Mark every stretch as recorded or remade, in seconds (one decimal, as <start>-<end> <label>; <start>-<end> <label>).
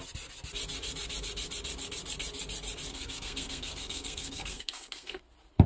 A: 0.0-2.9 recorded; 2.9-5.2 remade; 5.2-5.7 recorded